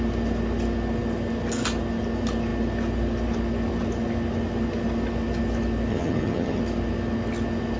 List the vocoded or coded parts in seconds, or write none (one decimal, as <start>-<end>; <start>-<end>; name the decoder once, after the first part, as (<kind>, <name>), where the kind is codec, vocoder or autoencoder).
5.9-6.6 (vocoder, HiFi-GAN)